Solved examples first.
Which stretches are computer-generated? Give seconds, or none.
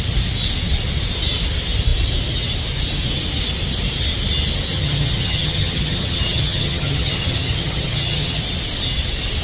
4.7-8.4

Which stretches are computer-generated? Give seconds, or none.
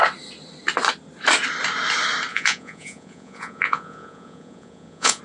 2.3-5.2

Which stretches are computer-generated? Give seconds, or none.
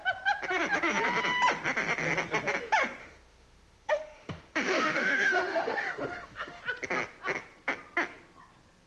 3.0-6.6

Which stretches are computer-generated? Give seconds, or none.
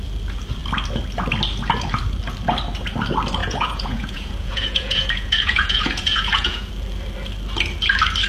3.4-6.7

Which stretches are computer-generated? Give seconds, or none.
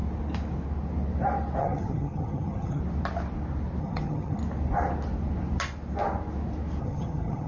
1.6-2.8; 3.8-4.4; 6.8-7.5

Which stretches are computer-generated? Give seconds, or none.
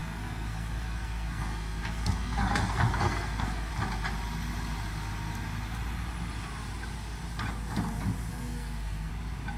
0.0-3.7; 8.3-9.1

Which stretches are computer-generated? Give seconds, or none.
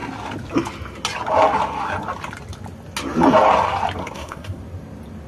4.0-4.6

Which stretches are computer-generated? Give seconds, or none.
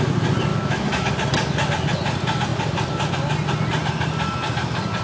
0.5-1.1